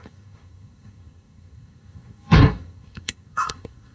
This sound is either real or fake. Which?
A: fake